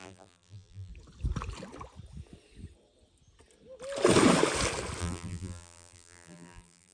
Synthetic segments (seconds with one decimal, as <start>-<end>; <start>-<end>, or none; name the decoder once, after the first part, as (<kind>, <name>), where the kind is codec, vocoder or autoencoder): 0.0-0.9 (vocoder, BigVGAN v2); 5.0-6.9